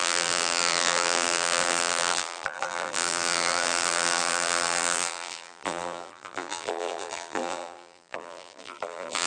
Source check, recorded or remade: remade